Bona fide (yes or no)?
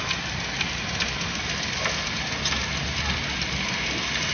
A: yes